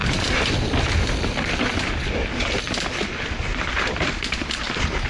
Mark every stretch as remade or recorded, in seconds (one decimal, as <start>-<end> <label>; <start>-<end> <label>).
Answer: 0.0-3.5 recorded; 3.5-4.6 remade; 4.6-5.1 recorded